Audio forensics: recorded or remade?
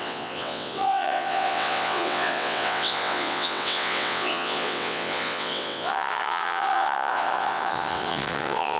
remade